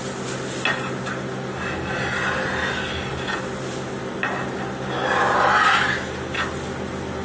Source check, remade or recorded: recorded